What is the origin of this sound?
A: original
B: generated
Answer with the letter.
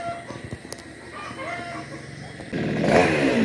A